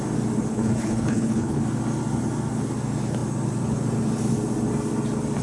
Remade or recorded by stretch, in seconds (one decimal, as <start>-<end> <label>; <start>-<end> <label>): 0.0-0.5 recorded; 0.5-1.6 remade; 1.6-5.4 recorded